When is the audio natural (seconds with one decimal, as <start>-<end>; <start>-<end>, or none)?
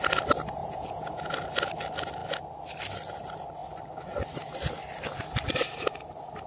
0.0-0.6; 1.3-6.5